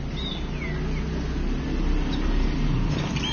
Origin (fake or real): real